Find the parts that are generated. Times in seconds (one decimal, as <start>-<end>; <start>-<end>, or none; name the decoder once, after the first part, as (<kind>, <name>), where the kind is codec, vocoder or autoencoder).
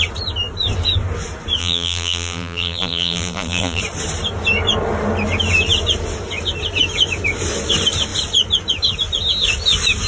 1.6-3.8 (vocoder, BigVGAN v2)